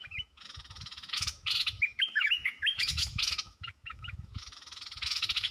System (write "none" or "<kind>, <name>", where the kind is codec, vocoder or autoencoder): autoencoder, DAC-VAE